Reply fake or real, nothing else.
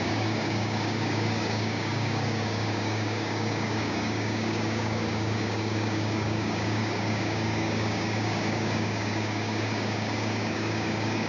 fake